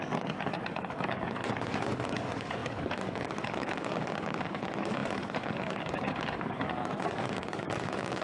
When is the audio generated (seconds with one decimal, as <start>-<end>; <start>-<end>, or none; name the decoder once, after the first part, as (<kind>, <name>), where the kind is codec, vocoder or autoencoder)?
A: 0.0-8.2 (codec, DAC)